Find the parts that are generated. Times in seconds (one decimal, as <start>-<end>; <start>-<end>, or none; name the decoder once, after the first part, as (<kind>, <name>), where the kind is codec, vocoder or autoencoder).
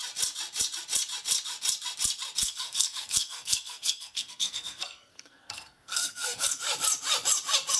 2.4-6.6 (codec, SNAC)